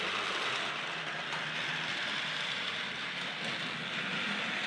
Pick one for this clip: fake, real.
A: real